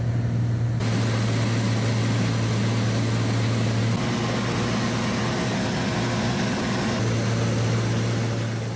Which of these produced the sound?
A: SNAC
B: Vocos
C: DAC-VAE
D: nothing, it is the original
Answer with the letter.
D